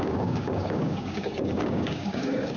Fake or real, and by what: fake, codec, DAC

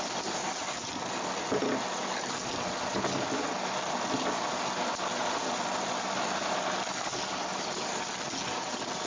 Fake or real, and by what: real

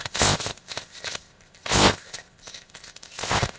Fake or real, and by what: fake, codec, ZipCodec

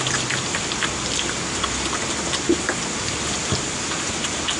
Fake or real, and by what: real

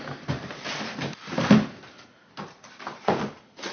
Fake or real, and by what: fake, vocoder, BigVGAN v2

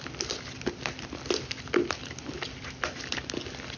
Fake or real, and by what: real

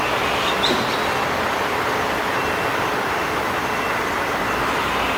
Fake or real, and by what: real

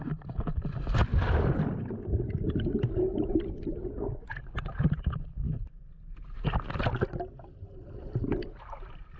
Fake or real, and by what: real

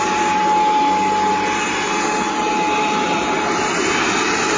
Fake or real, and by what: real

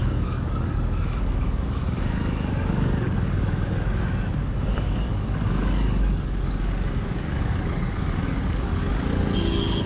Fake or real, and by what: fake, codec, DAC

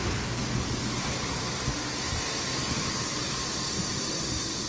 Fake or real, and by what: fake, vocoder, BigVGAN v2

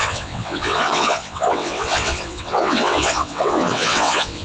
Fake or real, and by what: fake, vocoder, WaveNeXt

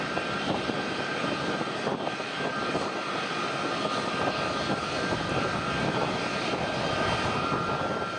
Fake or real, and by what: real